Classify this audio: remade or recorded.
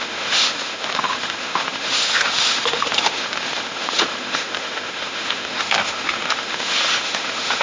remade